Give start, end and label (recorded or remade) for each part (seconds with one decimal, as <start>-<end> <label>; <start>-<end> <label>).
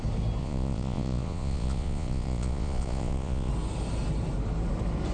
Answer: 0.0-0.4 recorded; 0.4-3.5 remade; 3.5-5.1 recorded